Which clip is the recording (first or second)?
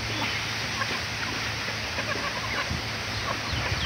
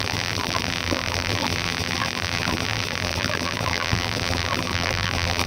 first